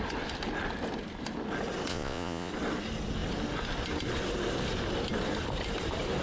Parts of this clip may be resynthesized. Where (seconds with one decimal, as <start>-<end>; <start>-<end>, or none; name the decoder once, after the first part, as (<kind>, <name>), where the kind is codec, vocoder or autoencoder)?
1.9-2.5 (vocoder, Vocos)

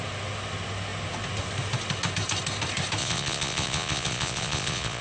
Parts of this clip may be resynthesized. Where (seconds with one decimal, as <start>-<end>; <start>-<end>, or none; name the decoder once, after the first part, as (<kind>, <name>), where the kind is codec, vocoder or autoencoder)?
3.0-5.0 (vocoder, Vocos)

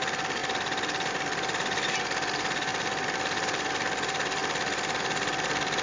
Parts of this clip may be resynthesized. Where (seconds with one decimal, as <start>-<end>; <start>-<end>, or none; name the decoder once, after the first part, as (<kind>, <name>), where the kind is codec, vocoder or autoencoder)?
none

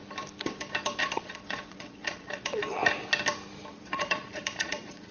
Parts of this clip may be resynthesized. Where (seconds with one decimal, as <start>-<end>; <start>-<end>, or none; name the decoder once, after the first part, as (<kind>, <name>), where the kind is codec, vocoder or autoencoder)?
1.0-2.8 (vocoder, Vocos); 3.7-5.1

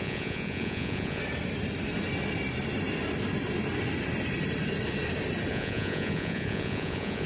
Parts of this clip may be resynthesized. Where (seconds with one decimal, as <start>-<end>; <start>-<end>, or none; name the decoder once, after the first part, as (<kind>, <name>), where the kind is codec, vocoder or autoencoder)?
0.0-1.2 (vocoder, Vocos); 5.5-7.3

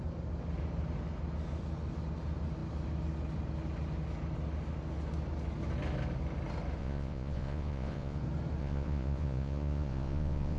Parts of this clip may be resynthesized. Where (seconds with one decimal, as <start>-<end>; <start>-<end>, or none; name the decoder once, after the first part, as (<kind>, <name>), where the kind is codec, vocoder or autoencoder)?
6.8-8.2 (vocoder, Vocos); 8.6-10.6

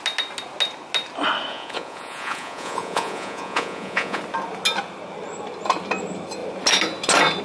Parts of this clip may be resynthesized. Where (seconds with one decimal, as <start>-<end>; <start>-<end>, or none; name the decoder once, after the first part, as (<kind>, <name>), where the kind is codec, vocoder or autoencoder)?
1.5-4.2 (vocoder, Vocos)

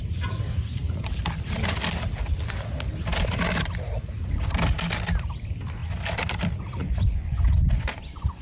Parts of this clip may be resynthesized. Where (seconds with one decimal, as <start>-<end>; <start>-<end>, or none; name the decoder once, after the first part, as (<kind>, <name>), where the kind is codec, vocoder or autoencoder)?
6.8-8.4 (vocoder, Vocos)